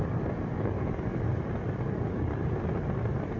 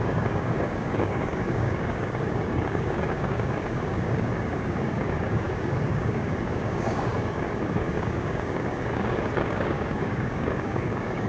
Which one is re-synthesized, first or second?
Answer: second